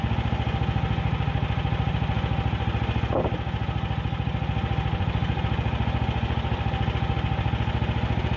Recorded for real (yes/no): yes